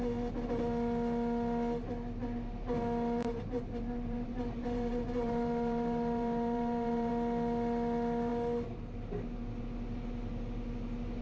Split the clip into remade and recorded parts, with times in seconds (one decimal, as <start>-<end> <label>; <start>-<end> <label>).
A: 0.0-3.2 recorded; 3.2-7.1 remade; 7.1-11.2 recorded